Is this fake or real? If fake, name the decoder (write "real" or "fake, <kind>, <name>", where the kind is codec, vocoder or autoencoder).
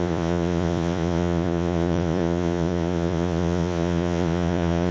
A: fake, vocoder, Vocos